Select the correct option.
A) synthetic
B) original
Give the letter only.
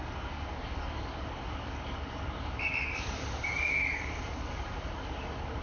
A